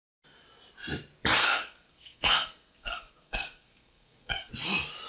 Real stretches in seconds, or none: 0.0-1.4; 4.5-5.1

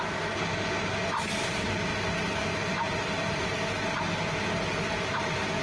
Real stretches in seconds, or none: 0.0-5.6